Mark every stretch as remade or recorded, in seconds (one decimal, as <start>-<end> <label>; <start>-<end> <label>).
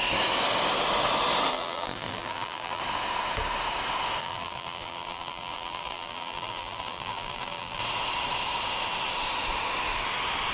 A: 0.0-1.5 recorded; 1.5-2.8 remade; 2.8-4.2 recorded; 4.2-7.8 remade; 7.8-10.5 recorded